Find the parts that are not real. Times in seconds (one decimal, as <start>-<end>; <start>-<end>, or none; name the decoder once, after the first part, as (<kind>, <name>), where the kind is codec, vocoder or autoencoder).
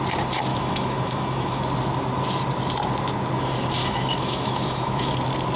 0.5-1.6 (autoencoder, DAC-VAE); 3.8-5.1